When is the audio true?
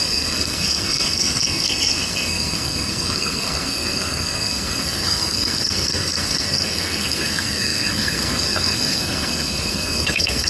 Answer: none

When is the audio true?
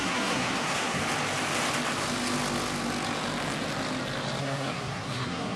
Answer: 1.0-4.4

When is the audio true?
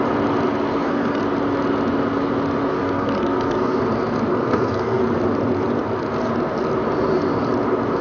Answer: 0.0-0.7; 1.2-2.7; 3.8-4.3; 5.0-8.0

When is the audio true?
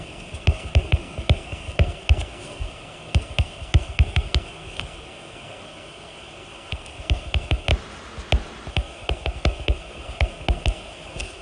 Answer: 7.7-8.7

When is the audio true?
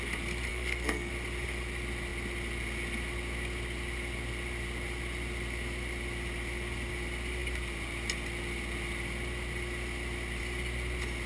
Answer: 0.0-0.5; 1.1-11.3